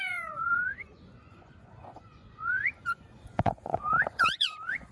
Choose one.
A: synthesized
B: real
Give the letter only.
A